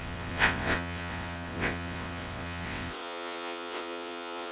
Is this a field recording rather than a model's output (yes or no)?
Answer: no